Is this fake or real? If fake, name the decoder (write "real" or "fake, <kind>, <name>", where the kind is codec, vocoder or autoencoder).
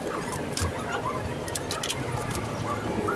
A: real